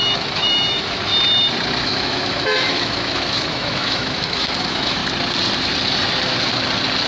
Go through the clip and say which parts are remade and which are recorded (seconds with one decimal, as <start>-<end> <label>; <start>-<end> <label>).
0.0-1.1 remade; 1.1-1.8 recorded; 1.8-5.0 remade; 5.0-7.1 recorded